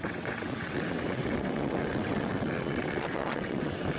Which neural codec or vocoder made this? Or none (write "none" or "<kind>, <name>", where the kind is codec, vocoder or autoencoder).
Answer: vocoder, WaveNeXt